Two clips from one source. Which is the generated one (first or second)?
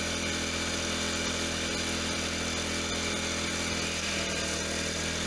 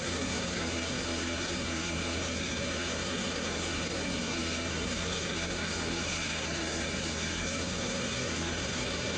second